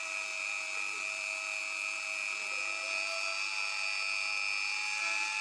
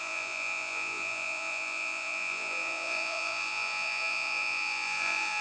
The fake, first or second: second